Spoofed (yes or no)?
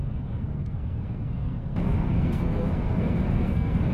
yes